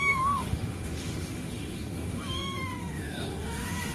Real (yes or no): no